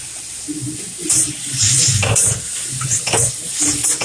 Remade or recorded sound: recorded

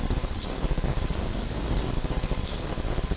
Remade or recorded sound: remade